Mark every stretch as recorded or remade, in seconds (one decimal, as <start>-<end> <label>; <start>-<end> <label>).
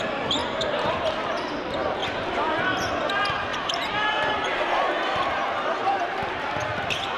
0.0-0.4 recorded; 0.4-0.9 remade; 0.9-2.0 recorded; 2.0-2.6 remade; 2.6-3.5 recorded; 3.5-6.5 remade; 6.5-7.2 recorded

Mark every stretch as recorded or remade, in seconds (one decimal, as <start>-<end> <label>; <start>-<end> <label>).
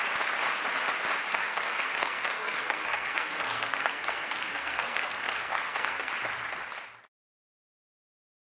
0.0-1.3 recorded; 1.3-6.1 remade; 6.1-8.5 recorded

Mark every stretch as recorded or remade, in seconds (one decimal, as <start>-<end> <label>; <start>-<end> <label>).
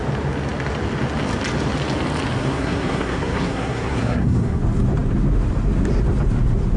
0.0-2.4 recorded; 2.4-4.6 remade; 4.6-6.8 recorded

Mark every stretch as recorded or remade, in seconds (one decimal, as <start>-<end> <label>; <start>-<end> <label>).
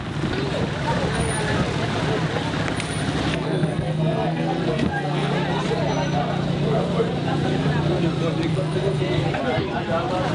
0.0-3.3 recorded; 3.3-5.3 remade; 5.3-8.5 recorded; 8.5-9.0 remade; 9.0-10.3 recorded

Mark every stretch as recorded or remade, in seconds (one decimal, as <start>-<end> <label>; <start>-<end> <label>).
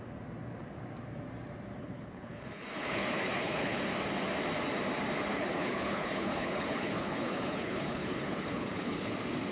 0.0-1.8 recorded; 1.8-3.8 remade; 3.8-5.3 recorded; 5.3-9.1 remade; 9.1-9.5 recorded